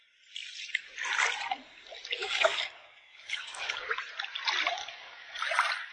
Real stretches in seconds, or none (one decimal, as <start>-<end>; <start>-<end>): 0.0-2.2; 3.9-4.8; 5.4-5.9